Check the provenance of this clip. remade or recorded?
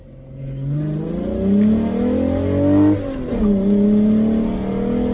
recorded